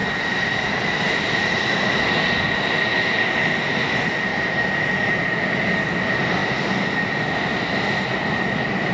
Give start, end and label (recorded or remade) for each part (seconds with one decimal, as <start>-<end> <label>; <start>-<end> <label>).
0.0-2.1 remade; 2.1-4.3 recorded; 4.3-5.5 remade; 5.5-8.9 recorded